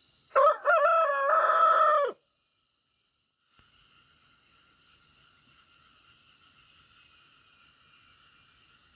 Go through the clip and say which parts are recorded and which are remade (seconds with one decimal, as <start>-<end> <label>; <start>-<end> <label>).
0.0-9.0 recorded